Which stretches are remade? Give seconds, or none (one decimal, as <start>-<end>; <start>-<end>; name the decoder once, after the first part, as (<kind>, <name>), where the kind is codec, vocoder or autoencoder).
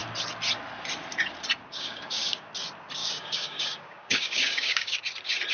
1.7-2.5 (codec, DAC); 3.0-5.0